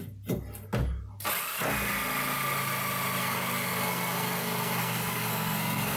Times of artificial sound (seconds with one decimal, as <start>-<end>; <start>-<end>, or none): 3.2-6.0